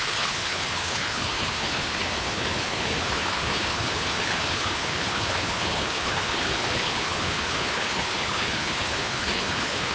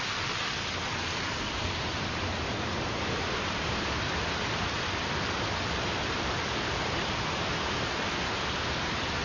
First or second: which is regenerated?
first